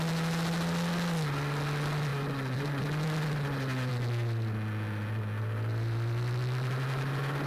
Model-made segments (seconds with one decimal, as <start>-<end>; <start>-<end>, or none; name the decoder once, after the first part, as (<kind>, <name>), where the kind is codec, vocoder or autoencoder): none